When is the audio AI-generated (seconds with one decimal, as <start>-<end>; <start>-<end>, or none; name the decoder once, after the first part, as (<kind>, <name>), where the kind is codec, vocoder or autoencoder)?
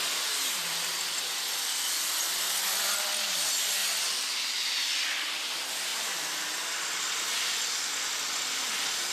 none